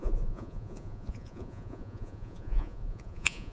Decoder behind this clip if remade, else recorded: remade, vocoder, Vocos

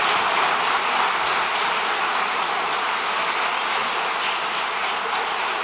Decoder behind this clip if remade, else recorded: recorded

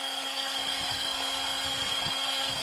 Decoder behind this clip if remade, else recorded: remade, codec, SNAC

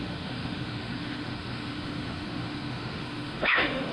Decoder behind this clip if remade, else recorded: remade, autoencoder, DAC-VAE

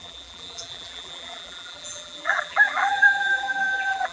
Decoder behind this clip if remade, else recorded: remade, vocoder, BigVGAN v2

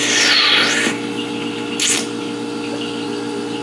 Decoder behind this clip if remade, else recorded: recorded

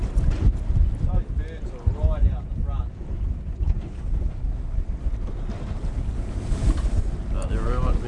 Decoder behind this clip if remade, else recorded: recorded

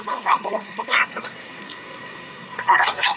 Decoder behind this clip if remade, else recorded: remade, codec, SNAC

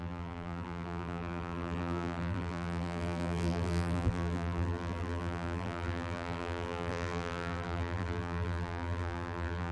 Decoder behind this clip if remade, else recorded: remade, vocoder, BigVGAN v2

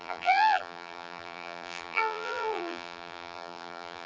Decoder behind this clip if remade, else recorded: remade, vocoder, BigVGAN v2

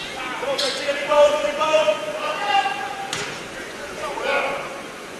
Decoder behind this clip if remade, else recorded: remade, vocoder, Vocos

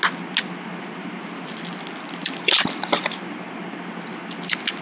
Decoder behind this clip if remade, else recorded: recorded